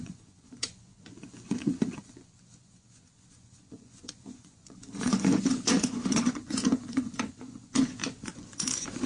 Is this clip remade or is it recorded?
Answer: remade